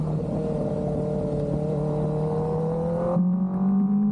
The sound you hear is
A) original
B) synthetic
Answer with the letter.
A